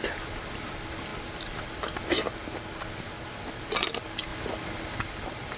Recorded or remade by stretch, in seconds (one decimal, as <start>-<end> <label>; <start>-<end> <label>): 0.0-2.4 remade; 2.4-3.9 recorded; 3.9-4.3 remade; 4.3-5.0 recorded; 5.0-5.6 remade